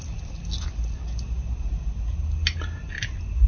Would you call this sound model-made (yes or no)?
no